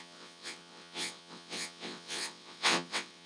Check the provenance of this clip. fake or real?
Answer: fake